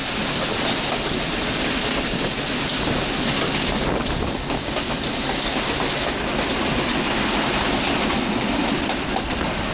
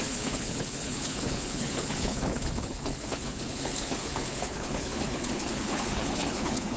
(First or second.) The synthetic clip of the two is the second